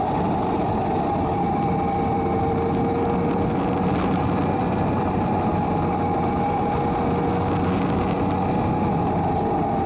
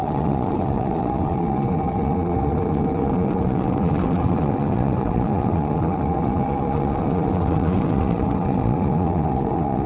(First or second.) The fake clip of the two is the second